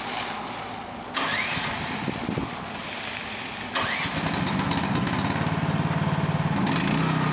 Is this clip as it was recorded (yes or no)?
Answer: yes